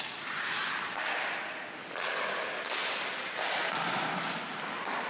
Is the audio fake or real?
real